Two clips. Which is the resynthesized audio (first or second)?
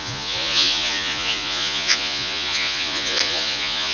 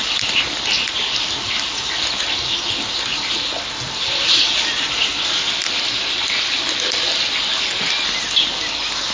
first